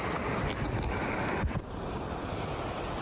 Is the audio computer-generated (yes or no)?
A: no